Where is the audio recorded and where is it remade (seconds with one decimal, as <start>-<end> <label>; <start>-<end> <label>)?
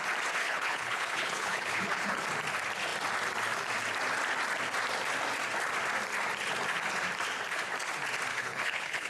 0.0-0.4 recorded; 0.4-2.2 remade; 2.2-8.3 recorded; 8.3-9.1 remade